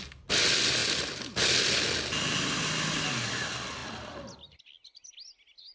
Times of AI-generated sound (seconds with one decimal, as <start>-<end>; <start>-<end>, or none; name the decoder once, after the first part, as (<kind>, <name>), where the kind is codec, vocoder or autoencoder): none